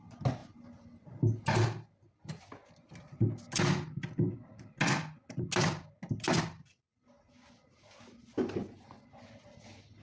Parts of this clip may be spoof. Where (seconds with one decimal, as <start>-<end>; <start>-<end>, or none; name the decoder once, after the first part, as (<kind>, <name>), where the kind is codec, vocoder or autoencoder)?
none